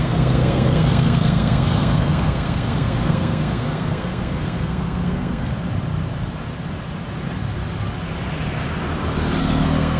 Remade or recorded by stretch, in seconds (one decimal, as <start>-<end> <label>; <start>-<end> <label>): 0.0-5.5 remade; 5.5-9.4 recorded; 9.4-10.0 remade